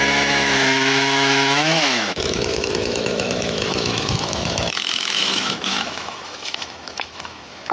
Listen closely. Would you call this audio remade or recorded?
remade